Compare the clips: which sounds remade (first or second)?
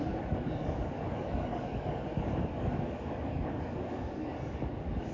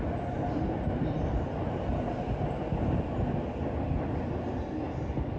first